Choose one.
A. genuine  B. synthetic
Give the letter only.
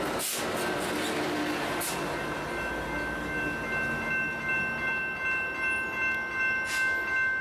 A